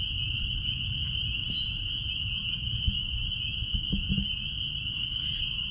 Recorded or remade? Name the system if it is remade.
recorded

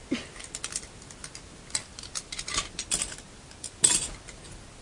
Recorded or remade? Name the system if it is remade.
recorded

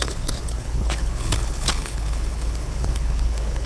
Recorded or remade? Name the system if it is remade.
remade, codec, HILCodec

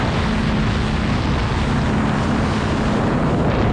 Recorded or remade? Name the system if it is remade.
recorded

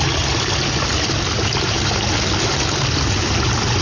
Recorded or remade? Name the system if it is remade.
recorded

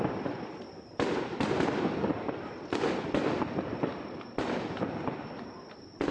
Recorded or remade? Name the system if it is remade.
recorded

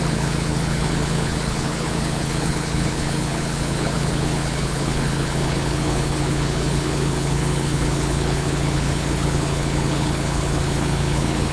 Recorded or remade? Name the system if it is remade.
remade, codec, HILCodec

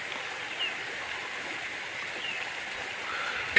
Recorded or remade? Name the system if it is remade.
recorded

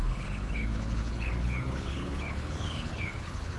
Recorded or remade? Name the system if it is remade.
remade, codec, HILCodec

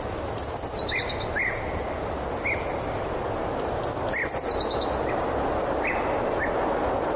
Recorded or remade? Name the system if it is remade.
recorded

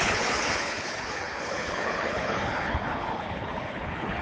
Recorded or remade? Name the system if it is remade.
remade, codec, HILCodec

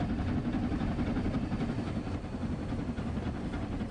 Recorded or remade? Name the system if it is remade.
recorded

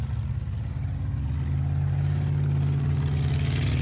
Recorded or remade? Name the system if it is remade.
recorded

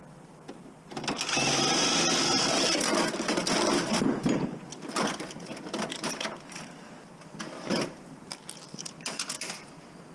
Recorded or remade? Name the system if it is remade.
recorded